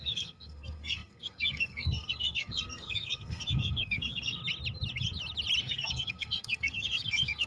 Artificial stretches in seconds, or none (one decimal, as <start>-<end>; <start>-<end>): 0.0-4.4; 5.6-7.5